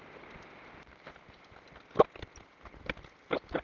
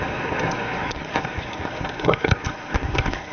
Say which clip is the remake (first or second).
second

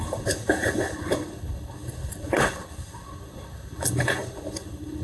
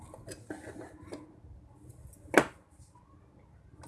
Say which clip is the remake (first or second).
first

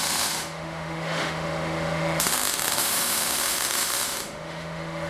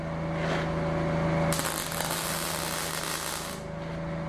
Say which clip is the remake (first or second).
first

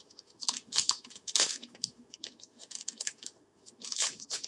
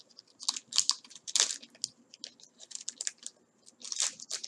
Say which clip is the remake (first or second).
first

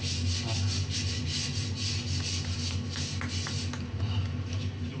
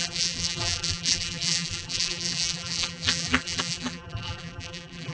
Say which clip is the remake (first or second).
second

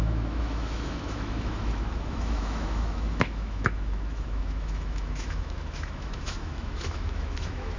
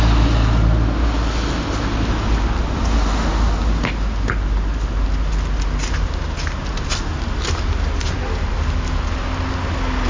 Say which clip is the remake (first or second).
first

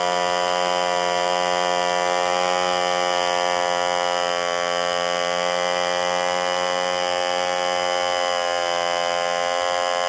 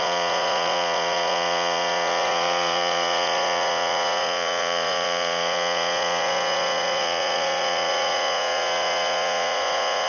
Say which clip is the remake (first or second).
second